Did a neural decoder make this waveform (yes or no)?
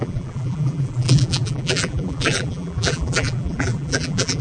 yes